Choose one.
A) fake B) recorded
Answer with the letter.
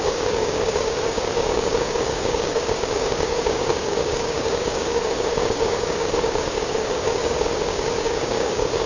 A